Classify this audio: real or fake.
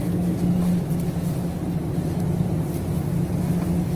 real